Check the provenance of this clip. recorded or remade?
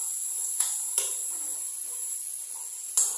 recorded